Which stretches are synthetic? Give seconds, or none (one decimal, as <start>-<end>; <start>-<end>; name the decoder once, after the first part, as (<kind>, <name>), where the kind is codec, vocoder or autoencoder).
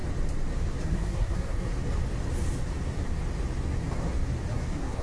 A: 0.8-1.7 (codec, SNAC); 4.5-5.0